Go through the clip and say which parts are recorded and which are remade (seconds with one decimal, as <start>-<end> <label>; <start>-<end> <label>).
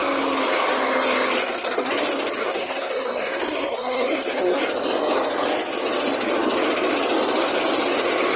0.0-1.4 recorded; 1.4-1.9 remade; 1.9-2.4 recorded; 2.4-4.6 remade; 4.6-8.4 recorded